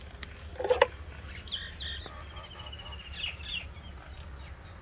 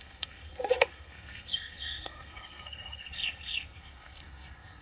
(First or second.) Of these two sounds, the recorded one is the first